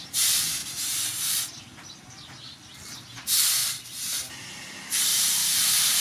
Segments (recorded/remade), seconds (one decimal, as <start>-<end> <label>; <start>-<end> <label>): 0.0-0.6 recorded; 0.6-1.4 remade; 1.4-5.1 recorded; 5.1-6.0 remade